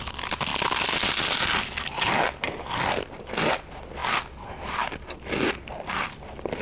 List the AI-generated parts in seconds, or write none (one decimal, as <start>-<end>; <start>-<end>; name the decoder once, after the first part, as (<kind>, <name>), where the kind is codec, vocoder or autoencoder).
0.0-0.5 (vocoder, BigVGAN v2); 3.5-4.0; 4.5-6.6